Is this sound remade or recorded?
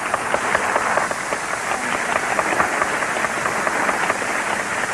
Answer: recorded